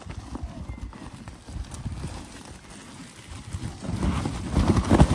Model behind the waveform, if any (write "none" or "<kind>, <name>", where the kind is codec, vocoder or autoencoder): none